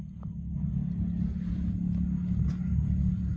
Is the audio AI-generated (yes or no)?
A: no